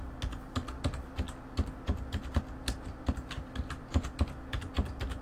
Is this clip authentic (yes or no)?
yes